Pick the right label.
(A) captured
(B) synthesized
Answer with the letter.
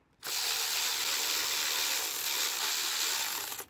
A